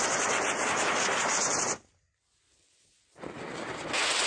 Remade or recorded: recorded